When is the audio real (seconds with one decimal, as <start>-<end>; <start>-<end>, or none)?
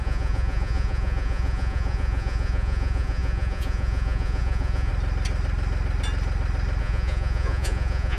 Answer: 4.9-6.8